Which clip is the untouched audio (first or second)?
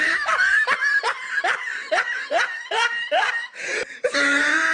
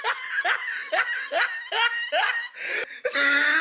second